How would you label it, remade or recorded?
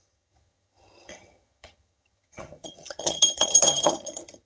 remade